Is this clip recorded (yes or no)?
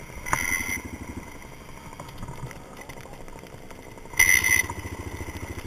yes